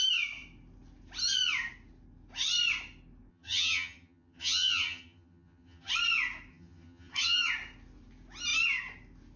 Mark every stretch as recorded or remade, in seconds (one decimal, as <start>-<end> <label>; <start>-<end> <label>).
0.0-3.3 recorded; 3.3-5.9 remade; 5.9-6.5 recorded; 6.5-7.5 remade; 7.5-9.4 recorded